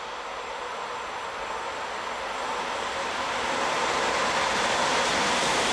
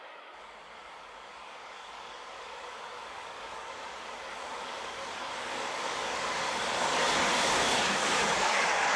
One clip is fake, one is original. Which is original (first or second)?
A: first